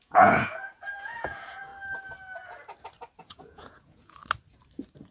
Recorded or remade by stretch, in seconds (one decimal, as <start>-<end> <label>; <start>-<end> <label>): 0.0-1.7 remade; 1.7-3.2 recorded; 3.2-4.2 remade; 4.2-5.1 recorded